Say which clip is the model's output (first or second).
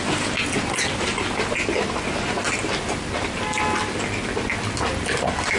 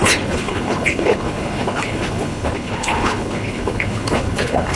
second